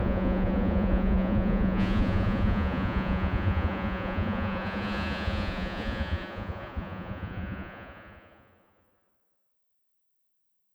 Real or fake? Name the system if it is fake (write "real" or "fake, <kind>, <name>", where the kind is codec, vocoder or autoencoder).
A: fake, vocoder, Vocos